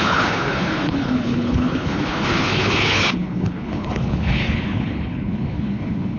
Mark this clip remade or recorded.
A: remade